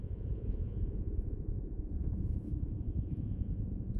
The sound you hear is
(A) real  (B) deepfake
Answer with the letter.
B